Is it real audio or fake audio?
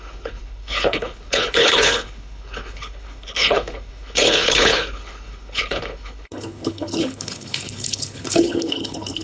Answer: fake